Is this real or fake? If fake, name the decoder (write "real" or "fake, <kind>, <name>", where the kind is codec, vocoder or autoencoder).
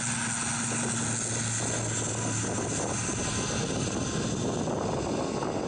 real